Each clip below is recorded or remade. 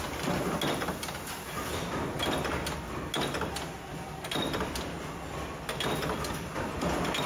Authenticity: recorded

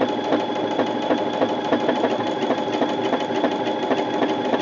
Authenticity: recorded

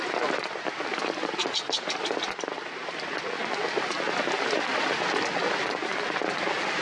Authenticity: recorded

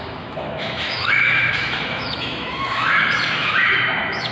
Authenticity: remade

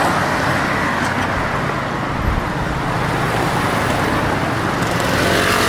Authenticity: recorded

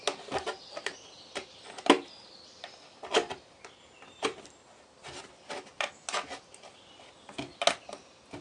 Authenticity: recorded